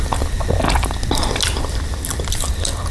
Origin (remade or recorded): recorded